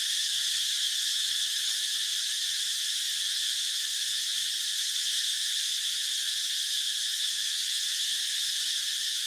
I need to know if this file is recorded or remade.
remade